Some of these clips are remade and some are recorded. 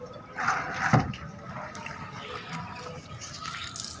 recorded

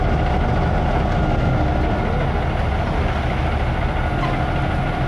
recorded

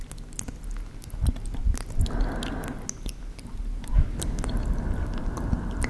recorded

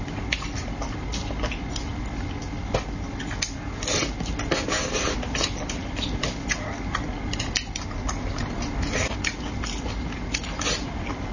recorded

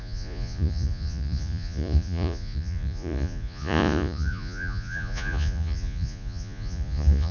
remade